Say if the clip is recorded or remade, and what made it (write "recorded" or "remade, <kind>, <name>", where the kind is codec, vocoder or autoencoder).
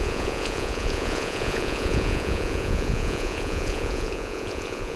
remade, vocoder, Vocos